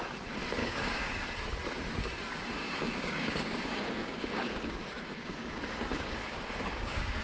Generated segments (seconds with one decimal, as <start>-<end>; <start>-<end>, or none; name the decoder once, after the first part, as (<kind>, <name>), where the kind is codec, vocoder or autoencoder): 0.6-1.2 (codec, DAC); 2.6-7.2